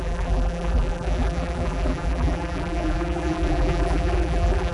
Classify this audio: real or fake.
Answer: fake